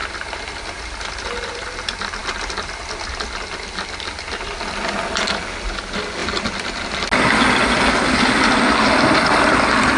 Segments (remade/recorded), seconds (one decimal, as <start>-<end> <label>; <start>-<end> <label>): 0.0-10.0 recorded